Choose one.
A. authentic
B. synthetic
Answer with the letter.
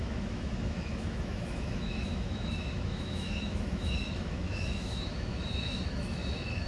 B